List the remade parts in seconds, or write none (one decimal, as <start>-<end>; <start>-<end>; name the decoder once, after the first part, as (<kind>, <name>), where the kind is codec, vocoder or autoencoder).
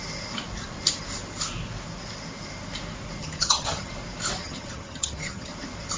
3.2-3.9 (vocoder, HiFi-GAN); 4.4-5.5